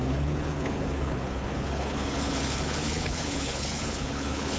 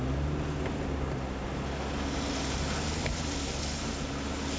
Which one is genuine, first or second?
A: second